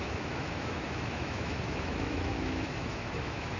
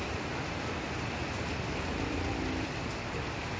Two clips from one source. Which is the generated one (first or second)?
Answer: first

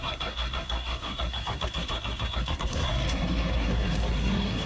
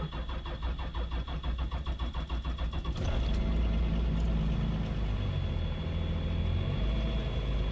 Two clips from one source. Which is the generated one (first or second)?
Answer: first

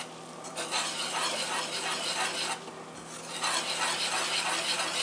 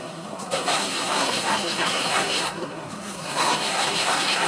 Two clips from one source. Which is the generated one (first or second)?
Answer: second